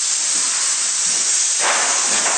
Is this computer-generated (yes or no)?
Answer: no